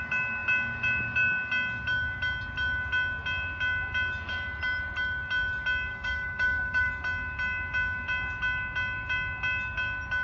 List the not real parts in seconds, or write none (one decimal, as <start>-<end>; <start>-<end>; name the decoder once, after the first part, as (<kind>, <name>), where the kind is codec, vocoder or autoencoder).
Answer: 5.9-6.9 (codec, DAC)